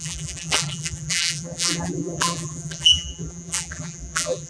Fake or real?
fake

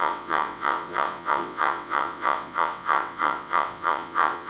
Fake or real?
fake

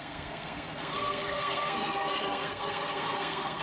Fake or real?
fake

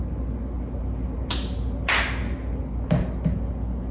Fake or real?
real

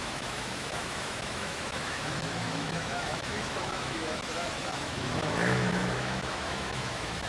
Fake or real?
fake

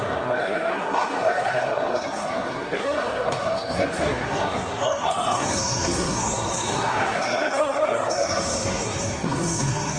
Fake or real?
fake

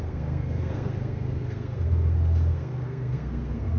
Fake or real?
fake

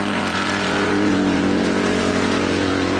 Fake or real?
fake